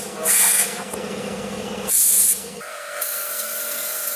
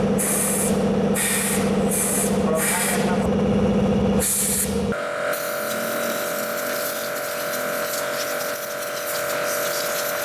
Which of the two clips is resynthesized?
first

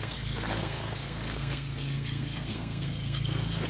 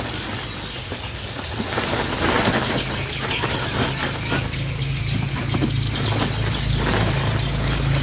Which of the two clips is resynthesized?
first